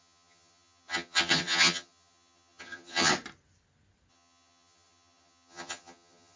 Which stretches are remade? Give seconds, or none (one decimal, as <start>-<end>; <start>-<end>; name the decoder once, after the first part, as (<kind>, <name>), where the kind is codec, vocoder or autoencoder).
0.0-3.1 (vocoder, HiFi-GAN); 4.1-6.4